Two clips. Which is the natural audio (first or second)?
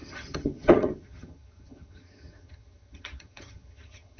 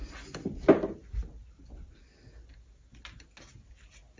second